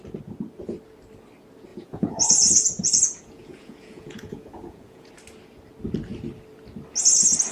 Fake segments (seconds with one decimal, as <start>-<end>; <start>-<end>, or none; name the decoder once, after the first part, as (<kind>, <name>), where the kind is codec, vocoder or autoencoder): 1.7-5.1 (vocoder, Vocos)